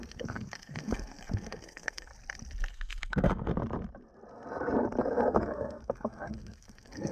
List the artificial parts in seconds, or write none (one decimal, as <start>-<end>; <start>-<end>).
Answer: 0.0-2.1; 2.7-3.5; 5.3-7.1